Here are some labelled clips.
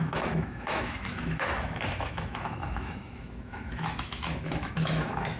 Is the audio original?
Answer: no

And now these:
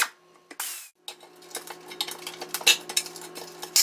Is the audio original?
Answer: yes